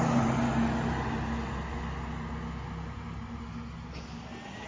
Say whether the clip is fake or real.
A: real